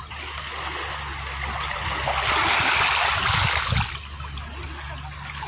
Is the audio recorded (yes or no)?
yes